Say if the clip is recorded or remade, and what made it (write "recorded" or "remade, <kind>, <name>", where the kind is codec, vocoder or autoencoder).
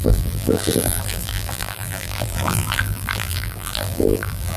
remade, vocoder, BigVGAN v2